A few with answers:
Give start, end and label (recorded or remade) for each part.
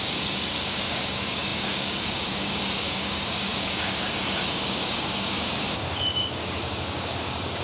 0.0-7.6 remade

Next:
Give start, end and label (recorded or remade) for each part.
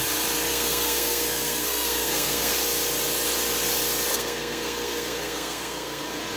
0.0-0.5 recorded; 0.5-2.5 remade; 2.5-4.1 recorded; 4.1-6.0 remade; 6.0-6.4 recorded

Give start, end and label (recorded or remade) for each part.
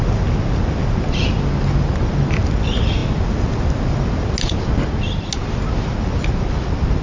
0.0-7.0 recorded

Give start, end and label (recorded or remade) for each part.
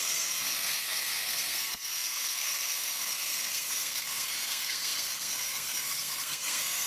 0.0-6.9 remade